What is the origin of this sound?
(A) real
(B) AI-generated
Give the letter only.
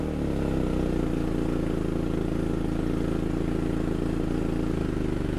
A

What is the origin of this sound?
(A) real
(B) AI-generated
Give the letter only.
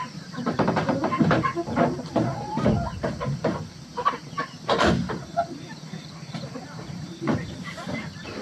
B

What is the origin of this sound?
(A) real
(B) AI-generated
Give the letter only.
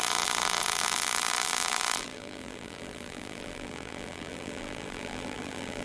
B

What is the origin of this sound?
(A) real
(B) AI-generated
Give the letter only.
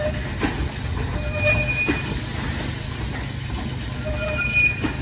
A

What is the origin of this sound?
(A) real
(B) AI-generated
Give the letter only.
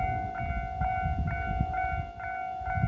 A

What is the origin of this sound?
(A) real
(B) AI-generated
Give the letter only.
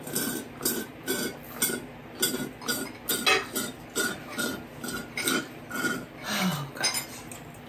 A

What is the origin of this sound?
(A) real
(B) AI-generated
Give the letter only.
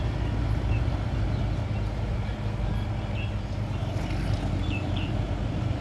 A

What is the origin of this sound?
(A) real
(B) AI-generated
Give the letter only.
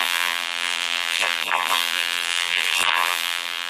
B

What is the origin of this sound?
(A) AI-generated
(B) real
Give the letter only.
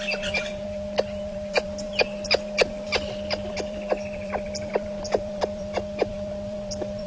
A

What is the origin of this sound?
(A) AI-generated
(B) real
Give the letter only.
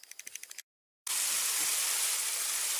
B